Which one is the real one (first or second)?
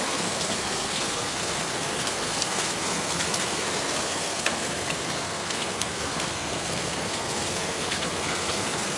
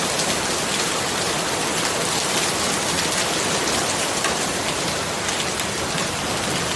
second